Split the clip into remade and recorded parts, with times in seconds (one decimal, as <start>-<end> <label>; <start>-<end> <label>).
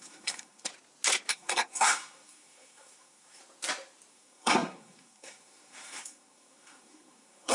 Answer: 0.0-0.7 remade; 0.7-1.3 recorded; 1.3-3.4 remade; 3.4-4.1 recorded; 4.1-7.5 remade